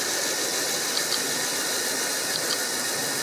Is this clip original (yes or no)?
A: no